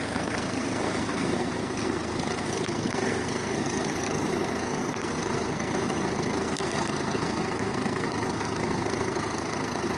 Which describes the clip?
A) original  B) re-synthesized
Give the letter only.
B